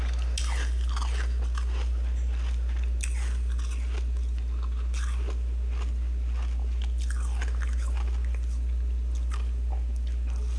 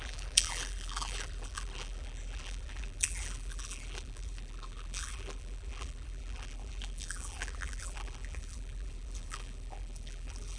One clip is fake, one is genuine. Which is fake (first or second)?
second